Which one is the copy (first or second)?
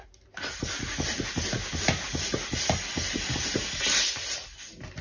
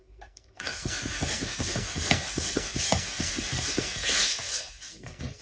second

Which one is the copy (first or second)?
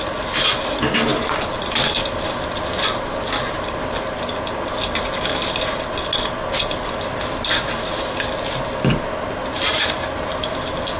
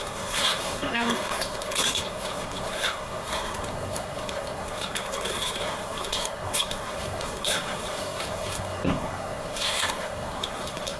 second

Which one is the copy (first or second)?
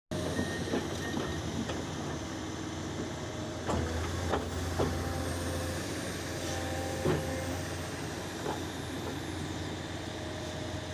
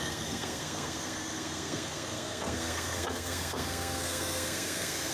second